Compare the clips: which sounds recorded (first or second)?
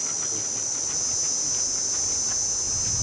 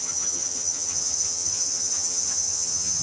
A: first